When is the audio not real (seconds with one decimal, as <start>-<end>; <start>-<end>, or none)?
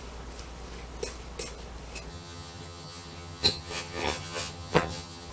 2.1-5.3